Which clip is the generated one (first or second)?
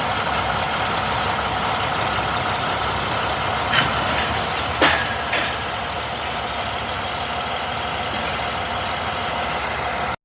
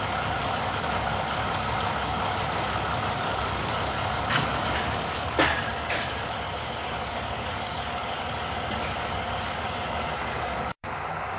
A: second